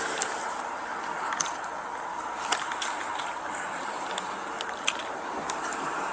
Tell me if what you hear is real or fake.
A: real